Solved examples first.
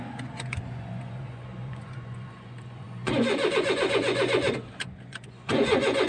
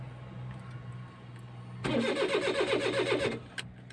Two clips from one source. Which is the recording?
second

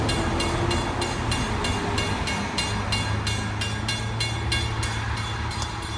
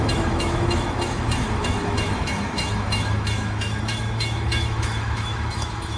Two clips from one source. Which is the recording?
first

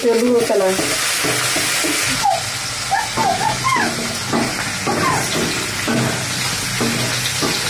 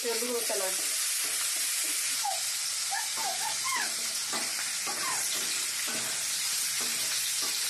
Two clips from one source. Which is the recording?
first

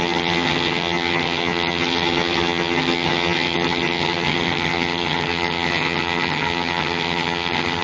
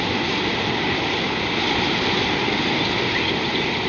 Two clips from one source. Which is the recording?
second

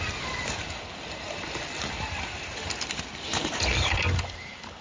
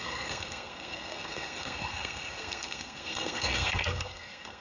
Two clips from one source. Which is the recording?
first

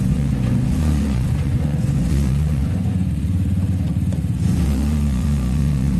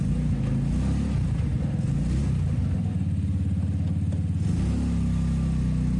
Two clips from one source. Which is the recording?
second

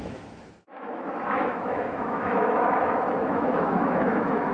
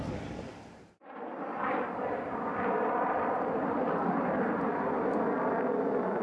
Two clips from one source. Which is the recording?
second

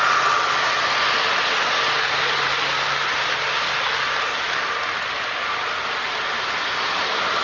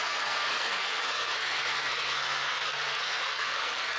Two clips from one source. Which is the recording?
first